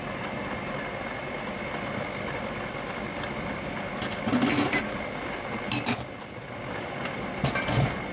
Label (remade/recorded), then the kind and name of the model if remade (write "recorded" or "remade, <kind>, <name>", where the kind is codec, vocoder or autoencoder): recorded